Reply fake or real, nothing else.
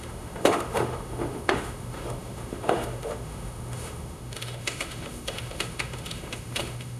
fake